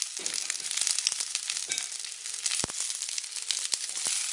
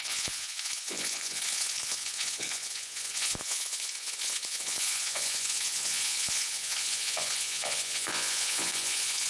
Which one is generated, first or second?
second